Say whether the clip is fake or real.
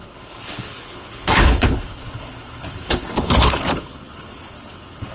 fake